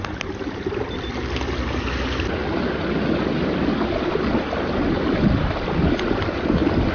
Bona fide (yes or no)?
yes